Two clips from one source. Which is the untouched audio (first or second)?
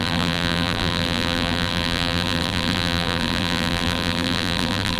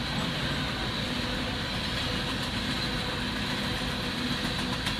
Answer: second